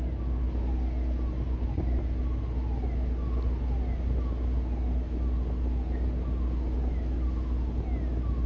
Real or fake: real